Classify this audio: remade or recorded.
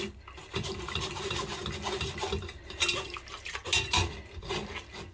recorded